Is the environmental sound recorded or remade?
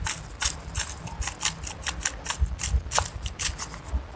recorded